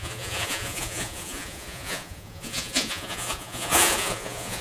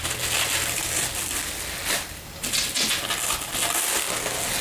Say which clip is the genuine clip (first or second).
second